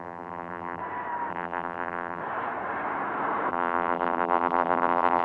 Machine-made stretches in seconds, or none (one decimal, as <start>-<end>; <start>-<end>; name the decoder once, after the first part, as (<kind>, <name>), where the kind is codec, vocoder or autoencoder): 0.0-0.8 (vocoder, BigVGAN v2); 1.3-2.2; 3.5-5.2